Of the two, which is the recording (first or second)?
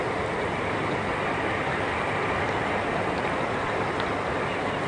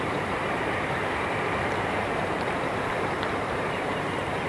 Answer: first